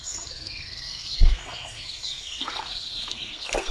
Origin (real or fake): fake